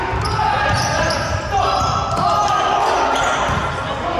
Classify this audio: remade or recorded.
recorded